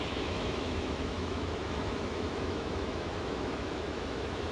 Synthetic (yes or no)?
yes